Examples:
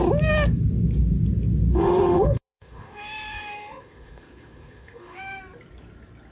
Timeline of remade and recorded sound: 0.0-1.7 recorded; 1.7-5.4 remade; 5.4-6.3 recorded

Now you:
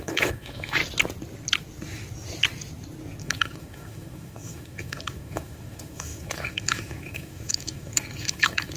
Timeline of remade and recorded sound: 0.0-0.8 remade; 0.8-3.2 recorded; 3.2-8.8 remade

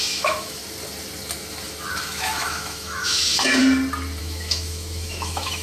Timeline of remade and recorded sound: 0.0-0.6 remade; 0.6-2.0 recorded; 2.0-3.6 remade; 3.6-4.2 recorded; 4.2-5.6 remade

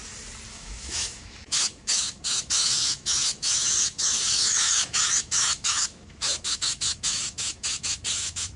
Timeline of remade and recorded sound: 0.0-0.5 recorded; 0.5-8.6 remade

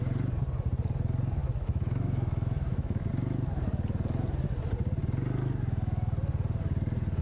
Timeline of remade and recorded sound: 0.0-1.4 recorded; 1.4-3.1 remade; 3.1-7.2 recorded

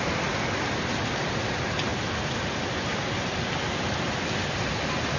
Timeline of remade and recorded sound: 0.0-5.2 recorded

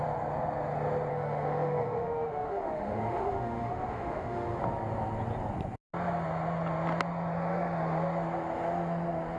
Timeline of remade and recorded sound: 0.0-1.1 recorded; 1.1-4.6 remade; 4.6-9.4 recorded